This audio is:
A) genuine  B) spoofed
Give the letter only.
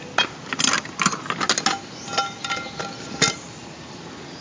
A